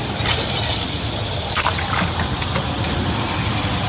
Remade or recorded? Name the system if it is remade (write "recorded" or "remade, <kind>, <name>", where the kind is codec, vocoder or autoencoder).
recorded